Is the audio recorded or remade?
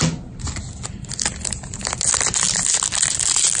recorded